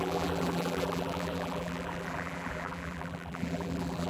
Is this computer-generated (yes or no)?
yes